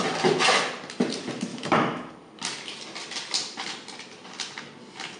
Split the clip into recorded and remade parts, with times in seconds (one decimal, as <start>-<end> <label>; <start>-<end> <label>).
0.0-1.5 recorded; 1.5-2.1 remade; 2.1-5.2 recorded